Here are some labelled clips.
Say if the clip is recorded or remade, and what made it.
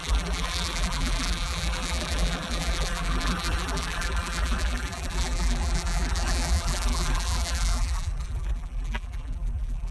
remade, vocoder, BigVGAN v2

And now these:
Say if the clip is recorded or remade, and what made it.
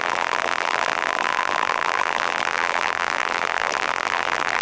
remade, vocoder, BigVGAN v2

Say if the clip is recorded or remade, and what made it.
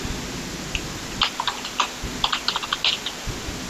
recorded